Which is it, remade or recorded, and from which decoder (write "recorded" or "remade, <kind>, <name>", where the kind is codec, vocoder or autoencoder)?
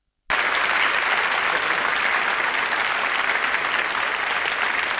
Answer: recorded